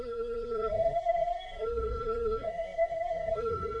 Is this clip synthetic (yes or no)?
yes